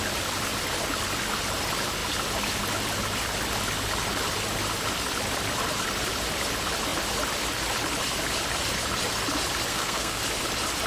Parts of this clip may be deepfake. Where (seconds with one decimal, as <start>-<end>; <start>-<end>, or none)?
9.7-10.2

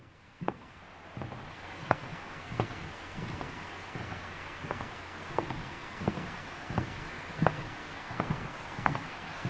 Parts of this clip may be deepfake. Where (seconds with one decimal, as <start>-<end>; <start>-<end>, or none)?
0.0-0.8; 1.5-9.5

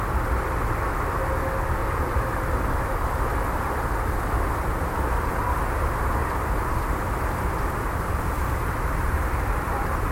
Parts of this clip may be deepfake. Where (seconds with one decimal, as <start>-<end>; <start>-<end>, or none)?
1.8-2.4; 6.2-10.1

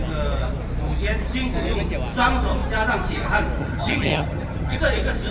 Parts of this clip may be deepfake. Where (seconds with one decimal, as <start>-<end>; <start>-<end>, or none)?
3.6-4.8

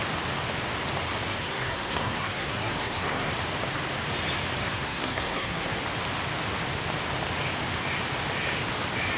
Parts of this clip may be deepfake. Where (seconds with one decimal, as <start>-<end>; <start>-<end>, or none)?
1.3-3.3; 4.6-5.8

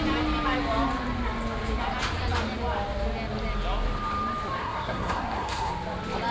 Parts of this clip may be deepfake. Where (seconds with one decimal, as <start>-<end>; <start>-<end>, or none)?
4.6-5.7

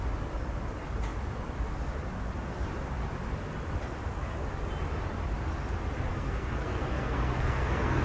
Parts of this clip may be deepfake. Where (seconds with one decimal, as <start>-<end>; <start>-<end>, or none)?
6.1-8.0

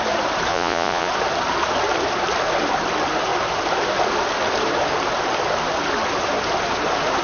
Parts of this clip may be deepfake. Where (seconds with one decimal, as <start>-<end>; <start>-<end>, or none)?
0.5-1.1